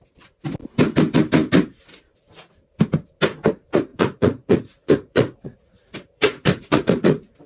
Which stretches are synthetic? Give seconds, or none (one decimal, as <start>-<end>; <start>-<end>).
3.9-7.5